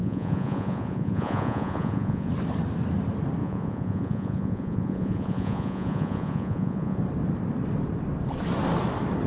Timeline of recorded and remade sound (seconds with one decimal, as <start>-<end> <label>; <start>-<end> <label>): 0.0-2.3 remade; 2.3-3.4 recorded; 3.4-7.0 remade; 7.0-9.3 recorded